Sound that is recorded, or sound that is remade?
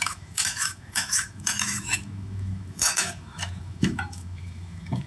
remade